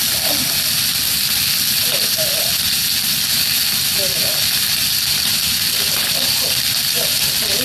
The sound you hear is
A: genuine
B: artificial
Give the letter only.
A